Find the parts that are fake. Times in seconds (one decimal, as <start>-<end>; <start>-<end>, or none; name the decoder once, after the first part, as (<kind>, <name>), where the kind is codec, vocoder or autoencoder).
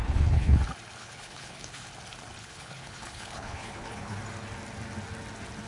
0.0-0.6 (codec, HILCodec); 1.0-1.9; 2.4-4.2